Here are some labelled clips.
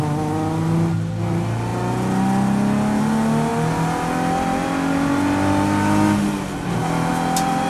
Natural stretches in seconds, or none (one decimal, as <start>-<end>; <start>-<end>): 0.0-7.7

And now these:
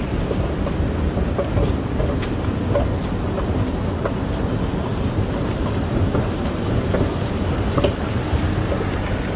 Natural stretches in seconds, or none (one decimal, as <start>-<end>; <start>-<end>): 0.0-9.4

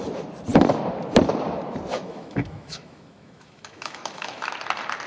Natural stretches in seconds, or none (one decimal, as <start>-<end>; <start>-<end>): 0.0-1.9; 4.5-5.1

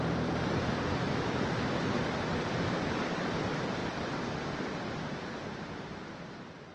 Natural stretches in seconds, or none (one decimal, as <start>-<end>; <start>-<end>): 0.0-1.0; 1.8-6.7